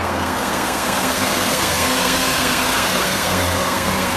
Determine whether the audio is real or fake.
fake